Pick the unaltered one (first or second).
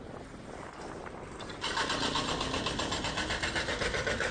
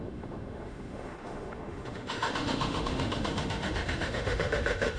first